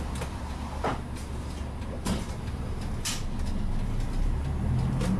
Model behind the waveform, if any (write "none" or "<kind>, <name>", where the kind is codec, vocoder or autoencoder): none